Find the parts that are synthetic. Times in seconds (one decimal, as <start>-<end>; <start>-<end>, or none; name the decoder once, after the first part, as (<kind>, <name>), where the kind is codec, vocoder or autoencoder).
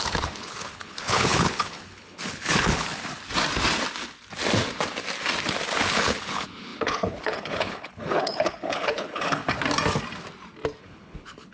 0.0-2.9 (codec, HILCodec); 5.8-9.4; 10.8-11.5